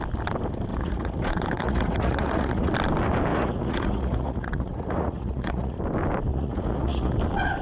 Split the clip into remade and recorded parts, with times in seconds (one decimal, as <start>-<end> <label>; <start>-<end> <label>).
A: 0.0-0.7 recorded; 0.7-2.7 remade; 2.7-3.3 recorded; 3.3-5.8 remade; 5.8-6.3 recorded; 6.3-7.1 remade; 7.1-7.6 recorded